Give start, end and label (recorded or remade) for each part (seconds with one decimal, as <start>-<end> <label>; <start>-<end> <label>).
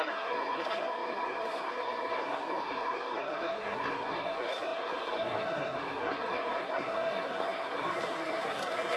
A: 0.0-9.0 remade